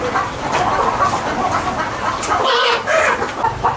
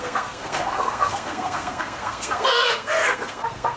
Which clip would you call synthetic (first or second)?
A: second